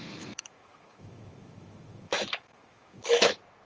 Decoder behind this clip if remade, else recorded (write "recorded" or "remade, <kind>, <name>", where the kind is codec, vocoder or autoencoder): remade, autoencoder, DAC-VAE